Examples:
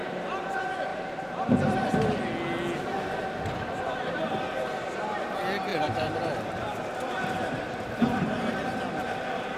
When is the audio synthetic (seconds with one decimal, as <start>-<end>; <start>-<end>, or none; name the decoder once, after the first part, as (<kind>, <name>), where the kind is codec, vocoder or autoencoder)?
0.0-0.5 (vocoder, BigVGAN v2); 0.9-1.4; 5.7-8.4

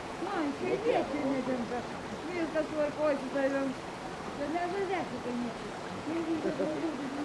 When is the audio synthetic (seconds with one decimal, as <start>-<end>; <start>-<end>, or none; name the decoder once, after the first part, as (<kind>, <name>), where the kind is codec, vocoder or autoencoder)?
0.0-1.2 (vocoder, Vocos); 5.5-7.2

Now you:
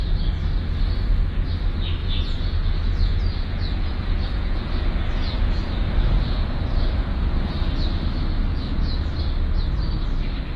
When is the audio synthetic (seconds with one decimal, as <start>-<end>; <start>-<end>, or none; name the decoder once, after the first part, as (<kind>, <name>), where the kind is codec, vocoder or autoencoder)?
2.0-6.6 (vocoder, Vocos); 7.0-7.7; 8.5-9.1

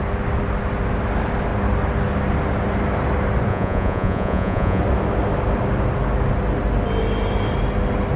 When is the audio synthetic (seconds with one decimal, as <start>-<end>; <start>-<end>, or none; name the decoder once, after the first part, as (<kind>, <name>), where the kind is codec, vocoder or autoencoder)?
3.5-4.8 (vocoder, Vocos)

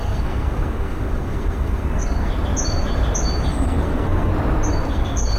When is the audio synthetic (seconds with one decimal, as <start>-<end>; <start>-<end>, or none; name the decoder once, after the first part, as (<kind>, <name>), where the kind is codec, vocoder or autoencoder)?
0.0-2.3 (codec, SNAC); 3.5-4.3; 4.9-5.4

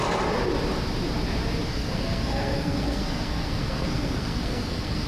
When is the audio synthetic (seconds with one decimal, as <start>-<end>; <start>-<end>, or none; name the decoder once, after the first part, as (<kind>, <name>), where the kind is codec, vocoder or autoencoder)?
1.7-5.1 (codec, SNAC)

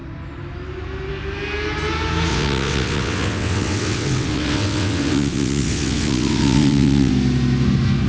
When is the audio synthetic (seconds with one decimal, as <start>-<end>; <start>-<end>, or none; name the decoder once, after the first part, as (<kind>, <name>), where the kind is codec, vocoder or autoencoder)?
2.3-7.1 (vocoder, WaveNeXt)